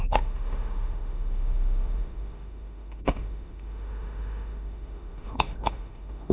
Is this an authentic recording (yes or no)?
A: no